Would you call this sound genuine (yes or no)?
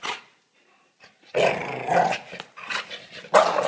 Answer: yes